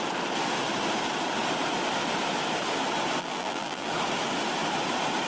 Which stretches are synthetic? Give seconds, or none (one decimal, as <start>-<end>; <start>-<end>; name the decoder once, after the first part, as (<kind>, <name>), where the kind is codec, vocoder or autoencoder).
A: 3.2-3.9 (vocoder, BigVGAN v2)